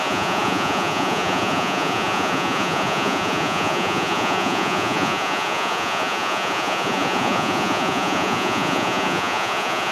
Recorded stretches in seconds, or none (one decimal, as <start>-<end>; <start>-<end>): none